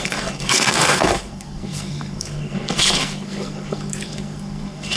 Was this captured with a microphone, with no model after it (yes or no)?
no